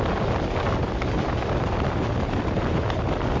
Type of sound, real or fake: real